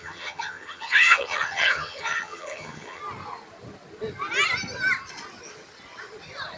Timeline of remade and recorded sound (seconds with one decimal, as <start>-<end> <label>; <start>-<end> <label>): 0.0-3.0 remade; 3.0-6.6 recorded